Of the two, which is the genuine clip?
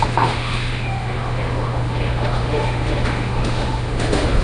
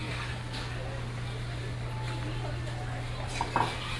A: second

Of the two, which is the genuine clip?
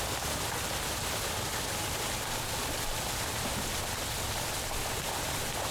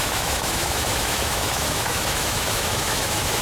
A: first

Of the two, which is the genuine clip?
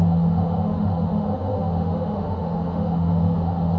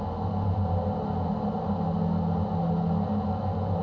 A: second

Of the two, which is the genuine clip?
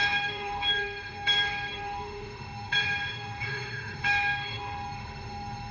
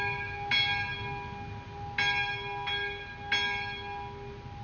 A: second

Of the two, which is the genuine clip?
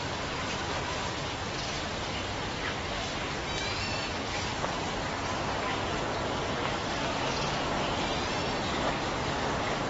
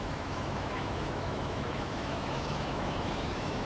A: first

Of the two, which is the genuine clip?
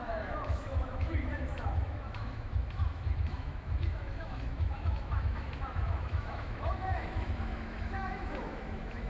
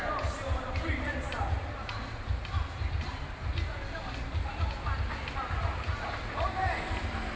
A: second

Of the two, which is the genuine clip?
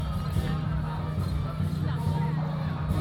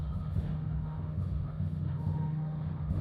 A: first